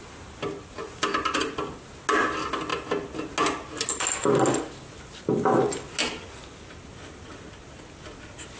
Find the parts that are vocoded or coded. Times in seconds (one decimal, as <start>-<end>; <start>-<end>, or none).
none